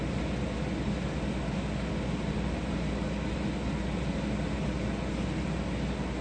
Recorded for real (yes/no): yes